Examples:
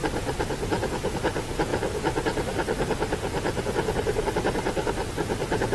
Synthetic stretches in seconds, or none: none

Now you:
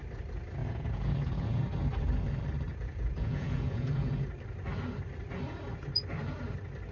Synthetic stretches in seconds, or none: 0.6-1.6; 2.7-4.1

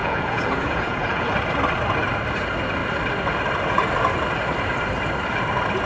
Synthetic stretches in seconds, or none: 0.0-1.3